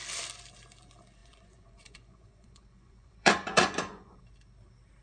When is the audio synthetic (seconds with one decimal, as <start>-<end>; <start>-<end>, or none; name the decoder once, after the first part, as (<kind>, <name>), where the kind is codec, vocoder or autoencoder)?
1.2-4.2 (vocoder, Vocos)